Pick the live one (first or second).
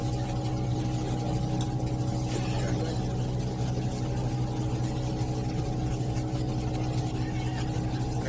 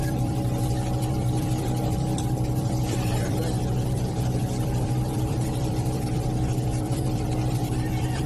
first